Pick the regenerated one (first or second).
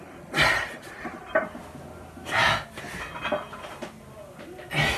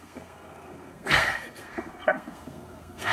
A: second